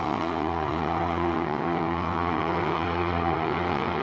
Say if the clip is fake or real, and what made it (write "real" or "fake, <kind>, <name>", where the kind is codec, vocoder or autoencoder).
fake, vocoder, WaveNeXt